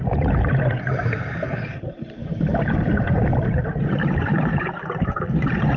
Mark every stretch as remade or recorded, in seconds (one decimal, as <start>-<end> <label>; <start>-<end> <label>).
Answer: 0.0-2.2 remade; 2.2-3.0 recorded; 3.0-5.8 remade